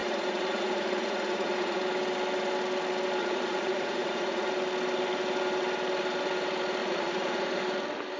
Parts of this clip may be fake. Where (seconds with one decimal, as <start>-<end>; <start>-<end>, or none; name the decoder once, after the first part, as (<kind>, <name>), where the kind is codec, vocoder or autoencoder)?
0.0-1.8 (vocoder, Vocos); 3.2-4.5; 6.8-7.6